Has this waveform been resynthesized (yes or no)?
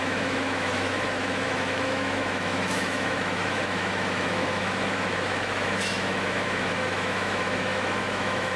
yes